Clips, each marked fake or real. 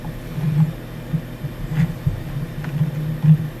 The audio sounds real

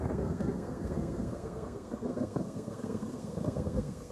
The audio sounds fake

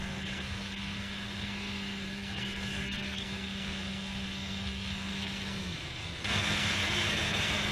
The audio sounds fake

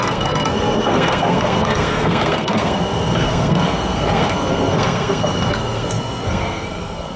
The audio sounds fake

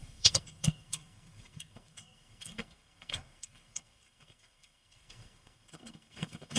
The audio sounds fake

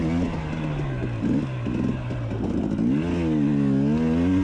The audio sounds real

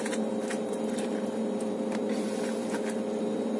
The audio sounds real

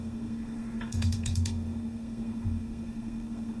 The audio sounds fake